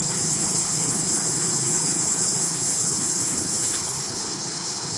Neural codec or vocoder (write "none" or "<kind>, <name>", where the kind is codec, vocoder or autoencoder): codec, HILCodec